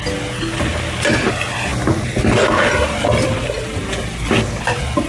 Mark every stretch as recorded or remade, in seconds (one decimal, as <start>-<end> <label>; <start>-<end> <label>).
0.0-5.1 recorded